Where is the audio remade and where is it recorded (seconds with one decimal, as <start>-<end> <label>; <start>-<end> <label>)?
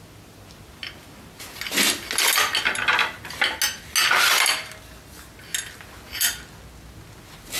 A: 0.0-7.6 recorded